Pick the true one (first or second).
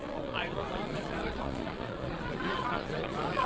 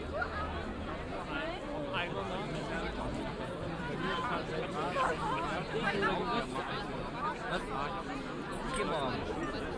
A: second